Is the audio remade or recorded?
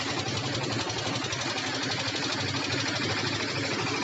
recorded